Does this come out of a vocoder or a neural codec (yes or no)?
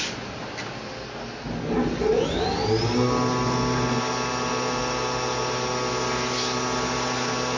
no